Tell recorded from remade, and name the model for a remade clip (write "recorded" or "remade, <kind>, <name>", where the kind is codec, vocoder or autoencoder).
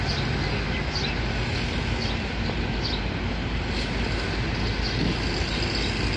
recorded